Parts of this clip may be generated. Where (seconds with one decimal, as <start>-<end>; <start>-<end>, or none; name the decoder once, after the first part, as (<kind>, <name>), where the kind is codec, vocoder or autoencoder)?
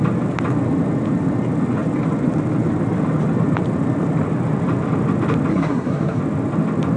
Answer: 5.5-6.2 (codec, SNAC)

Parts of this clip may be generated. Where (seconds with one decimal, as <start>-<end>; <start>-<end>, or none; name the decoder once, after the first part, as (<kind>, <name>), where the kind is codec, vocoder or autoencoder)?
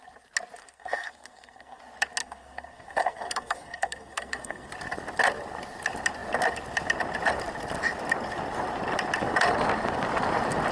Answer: 0.6-1.8 (codec, SNAC); 2.2-4.7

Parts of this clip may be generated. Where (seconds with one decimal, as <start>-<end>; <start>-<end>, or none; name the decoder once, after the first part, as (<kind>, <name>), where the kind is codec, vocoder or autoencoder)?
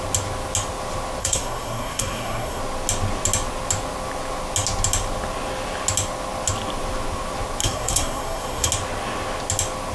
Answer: 1.2-2.6 (codec, SNAC); 7.6-8.7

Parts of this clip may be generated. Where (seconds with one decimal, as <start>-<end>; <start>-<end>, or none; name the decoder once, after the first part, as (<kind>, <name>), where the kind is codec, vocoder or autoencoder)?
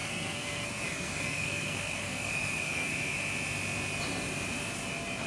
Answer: 0.0-3.2 (codec, SNAC)